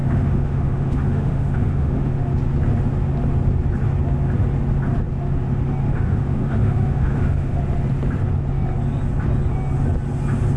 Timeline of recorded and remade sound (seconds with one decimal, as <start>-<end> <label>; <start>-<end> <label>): 0.0-2.1 remade; 2.1-5.8 recorded; 5.8-7.6 remade; 7.6-10.6 recorded